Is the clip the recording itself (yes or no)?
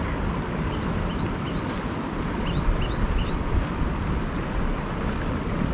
yes